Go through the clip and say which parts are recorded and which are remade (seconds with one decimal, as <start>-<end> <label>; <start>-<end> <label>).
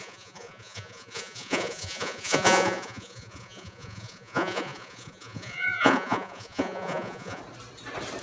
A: 0.0-7.4 remade; 7.4-8.2 recorded